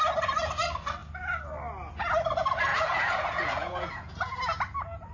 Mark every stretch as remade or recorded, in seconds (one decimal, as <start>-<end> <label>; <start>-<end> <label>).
0.0-2.7 recorded; 2.7-4.4 remade; 4.4-5.1 recorded